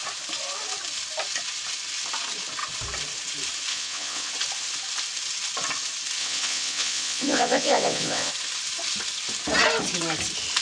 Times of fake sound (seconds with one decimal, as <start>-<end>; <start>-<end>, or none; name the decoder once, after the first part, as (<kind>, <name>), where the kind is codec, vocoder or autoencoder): 3.7-4.3 (vocoder, WaveNeXt); 6.2-8.3